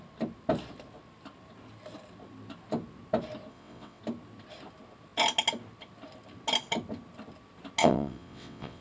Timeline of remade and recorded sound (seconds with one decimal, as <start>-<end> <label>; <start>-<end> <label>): 0.0-3.5 recorded; 3.5-4.0 remade; 4.0-7.8 recorded; 7.8-8.8 remade